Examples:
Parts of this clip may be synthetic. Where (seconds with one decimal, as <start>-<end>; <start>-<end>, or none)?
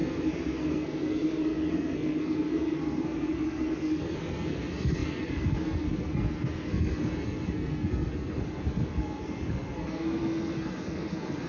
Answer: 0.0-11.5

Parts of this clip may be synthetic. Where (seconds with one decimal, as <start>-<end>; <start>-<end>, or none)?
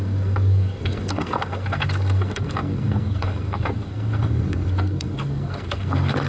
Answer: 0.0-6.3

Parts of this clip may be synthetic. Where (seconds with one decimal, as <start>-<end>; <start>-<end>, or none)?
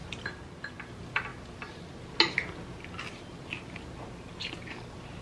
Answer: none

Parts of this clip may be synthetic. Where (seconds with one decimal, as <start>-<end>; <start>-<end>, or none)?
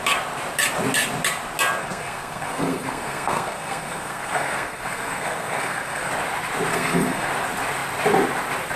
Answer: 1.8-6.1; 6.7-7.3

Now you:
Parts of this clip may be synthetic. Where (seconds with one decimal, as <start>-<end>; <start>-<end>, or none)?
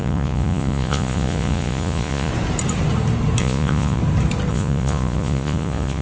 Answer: 0.0-2.3; 3.4-4.0; 4.5-6.0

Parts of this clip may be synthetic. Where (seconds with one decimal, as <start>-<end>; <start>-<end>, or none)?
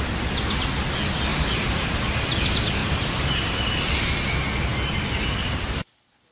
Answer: 1.3-1.9; 2.8-4.0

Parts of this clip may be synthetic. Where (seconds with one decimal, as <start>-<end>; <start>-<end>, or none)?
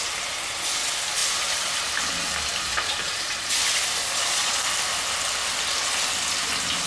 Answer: 2.7-3.5; 4.0-4.6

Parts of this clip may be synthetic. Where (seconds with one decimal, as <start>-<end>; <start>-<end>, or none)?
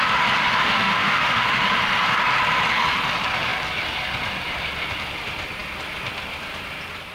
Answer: 0.6-1.6